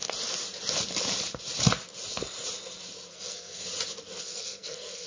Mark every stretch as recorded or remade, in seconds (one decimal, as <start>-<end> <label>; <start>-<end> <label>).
0.0-3.1 recorded; 3.1-3.6 remade; 3.6-4.2 recorded; 4.2-5.1 remade